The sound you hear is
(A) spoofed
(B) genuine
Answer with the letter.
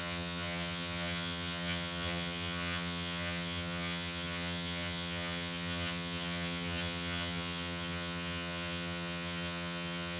A